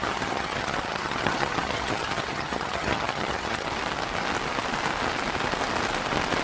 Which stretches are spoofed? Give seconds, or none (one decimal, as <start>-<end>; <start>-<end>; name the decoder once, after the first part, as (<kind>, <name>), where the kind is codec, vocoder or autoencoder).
0.0-3.7 (vocoder, HiFi-GAN)